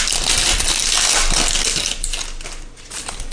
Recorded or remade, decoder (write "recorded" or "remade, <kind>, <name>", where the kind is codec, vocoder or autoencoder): recorded